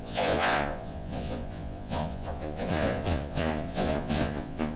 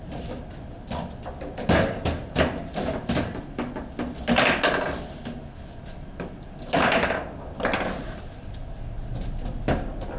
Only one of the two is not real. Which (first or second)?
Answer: first